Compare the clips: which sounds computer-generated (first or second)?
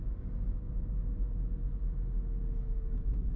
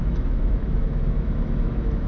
second